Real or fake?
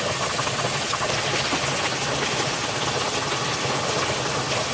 real